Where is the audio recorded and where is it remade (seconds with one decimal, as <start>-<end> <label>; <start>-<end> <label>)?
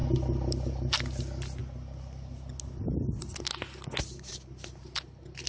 0.0-5.5 recorded